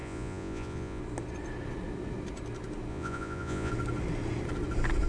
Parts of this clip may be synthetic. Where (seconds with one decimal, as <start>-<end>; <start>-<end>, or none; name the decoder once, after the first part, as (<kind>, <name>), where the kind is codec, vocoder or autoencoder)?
0.0-1.0 (vocoder, Vocos); 2.9-3.7